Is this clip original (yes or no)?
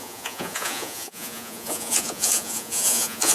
no